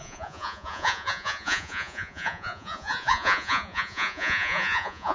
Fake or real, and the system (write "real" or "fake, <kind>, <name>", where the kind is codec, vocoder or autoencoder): fake, vocoder, Vocos